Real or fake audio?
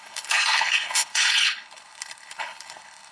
fake